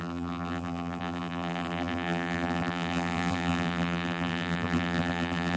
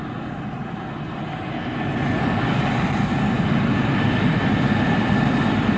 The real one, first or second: second